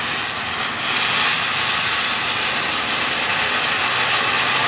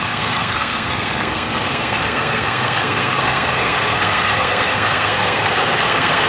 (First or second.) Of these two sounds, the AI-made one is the second